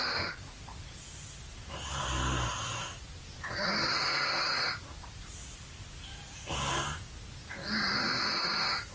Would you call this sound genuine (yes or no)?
yes